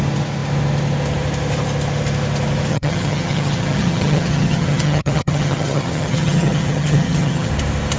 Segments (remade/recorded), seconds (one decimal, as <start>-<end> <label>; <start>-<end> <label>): 0.0-2.7 recorded; 2.7-7.5 remade; 7.5-8.0 recorded